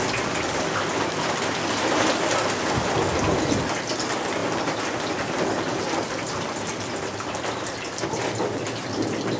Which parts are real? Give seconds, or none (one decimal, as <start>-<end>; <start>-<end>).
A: 0.0-9.4

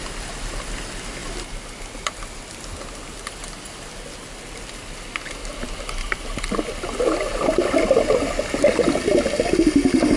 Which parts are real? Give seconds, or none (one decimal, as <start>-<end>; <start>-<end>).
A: 0.0-10.2